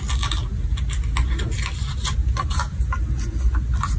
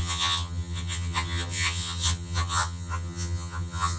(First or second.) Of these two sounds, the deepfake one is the second